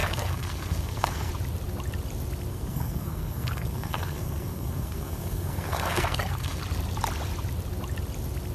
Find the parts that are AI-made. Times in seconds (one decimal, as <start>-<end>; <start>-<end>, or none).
0.0-1.3; 2.5-6.6